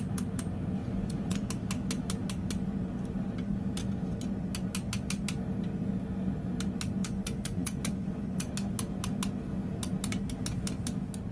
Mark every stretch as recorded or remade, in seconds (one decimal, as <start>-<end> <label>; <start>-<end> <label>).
0.0-0.8 recorded; 0.8-1.5 remade; 1.5-7.0 recorded; 7.0-8.5 remade; 8.5-11.3 recorded